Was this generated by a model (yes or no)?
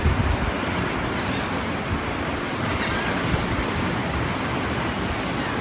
yes